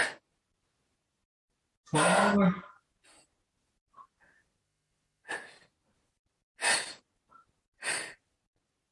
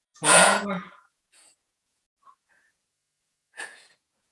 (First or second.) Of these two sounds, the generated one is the second